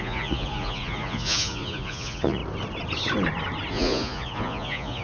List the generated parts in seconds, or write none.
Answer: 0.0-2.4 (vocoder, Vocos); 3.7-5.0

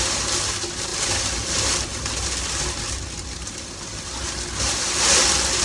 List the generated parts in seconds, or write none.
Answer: none

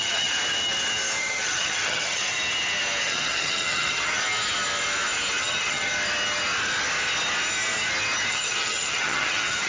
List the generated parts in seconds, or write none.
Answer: 0.0-0.4 (vocoder, HiFi-GAN); 1.2-2.3; 3.0-4.2; 5.4-5.9; 8.3-9.7

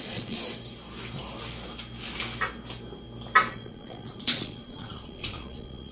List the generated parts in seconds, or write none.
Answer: 0.0-0.5 (vocoder, Vocos); 3.5-5.9

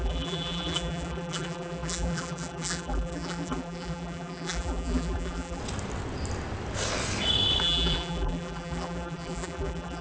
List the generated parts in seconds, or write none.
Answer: 0.0-5.6 (vocoder, BigVGAN v2); 7.6-10.0

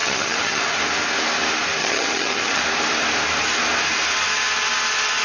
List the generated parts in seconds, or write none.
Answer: 0.0-0.6 (vocoder, HiFi-GAN); 1.8-2.6

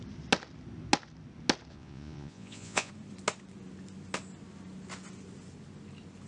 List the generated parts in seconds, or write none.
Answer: 1.7-2.9 (vocoder, Vocos)

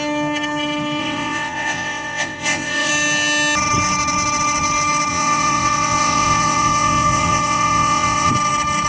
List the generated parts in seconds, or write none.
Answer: 1.0-2.9 (vocoder, WaveNeXt); 5.1-8.3